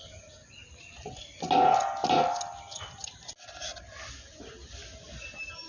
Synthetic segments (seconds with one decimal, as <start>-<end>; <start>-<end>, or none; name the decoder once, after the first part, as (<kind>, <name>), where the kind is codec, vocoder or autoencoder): none